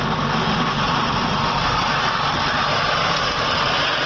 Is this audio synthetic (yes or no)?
no